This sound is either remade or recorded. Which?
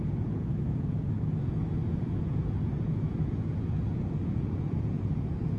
remade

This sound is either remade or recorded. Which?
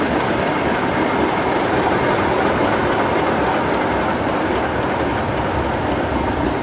recorded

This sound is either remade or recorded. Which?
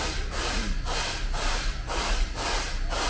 recorded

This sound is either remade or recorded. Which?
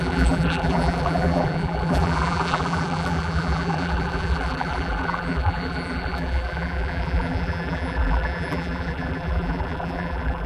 remade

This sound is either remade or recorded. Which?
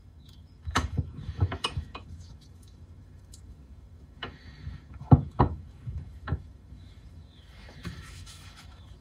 remade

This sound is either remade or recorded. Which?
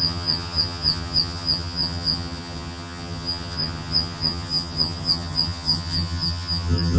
remade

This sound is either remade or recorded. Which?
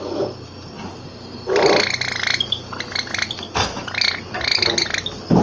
recorded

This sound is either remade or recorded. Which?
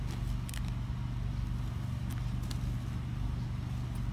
recorded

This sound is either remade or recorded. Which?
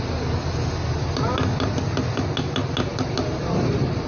recorded